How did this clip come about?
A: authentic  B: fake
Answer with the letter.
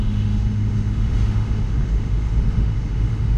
B